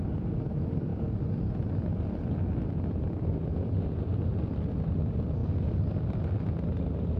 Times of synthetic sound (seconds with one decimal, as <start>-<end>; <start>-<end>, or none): none